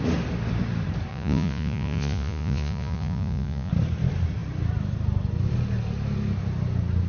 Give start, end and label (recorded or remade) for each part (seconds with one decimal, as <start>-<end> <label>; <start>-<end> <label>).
0.0-1.1 recorded; 1.1-3.7 remade; 3.7-7.1 recorded